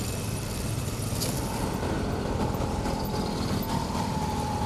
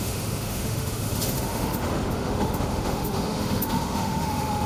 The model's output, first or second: second